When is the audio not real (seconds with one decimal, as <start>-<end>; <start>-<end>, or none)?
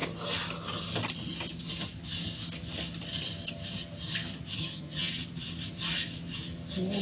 4.6-5.1